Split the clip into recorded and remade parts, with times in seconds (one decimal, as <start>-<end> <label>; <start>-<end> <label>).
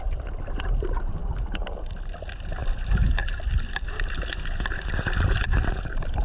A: 0.0-6.2 recorded